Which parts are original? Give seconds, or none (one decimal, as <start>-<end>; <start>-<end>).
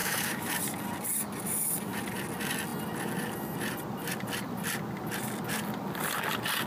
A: 0.5-6.7